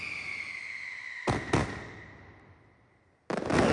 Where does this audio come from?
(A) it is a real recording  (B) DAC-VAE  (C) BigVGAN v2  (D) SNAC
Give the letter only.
A